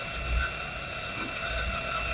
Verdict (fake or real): real